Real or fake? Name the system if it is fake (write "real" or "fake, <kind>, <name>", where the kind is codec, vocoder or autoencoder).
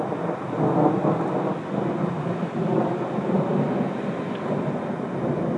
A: real